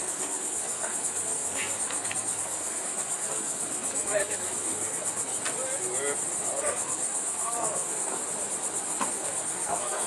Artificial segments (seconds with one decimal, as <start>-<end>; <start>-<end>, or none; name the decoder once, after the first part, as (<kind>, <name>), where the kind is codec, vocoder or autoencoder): 0.0-5.3 (codec, SNAC); 6.6-8.2; 9.1-10.1